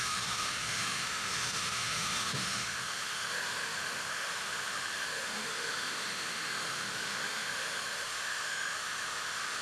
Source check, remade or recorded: remade